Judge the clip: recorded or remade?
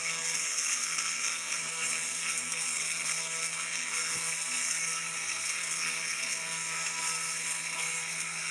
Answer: remade